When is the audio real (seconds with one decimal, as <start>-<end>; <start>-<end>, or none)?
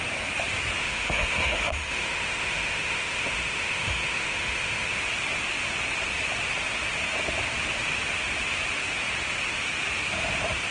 0.0-0.8; 5.0-10.7